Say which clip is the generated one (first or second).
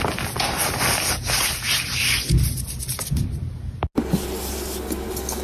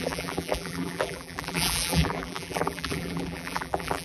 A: second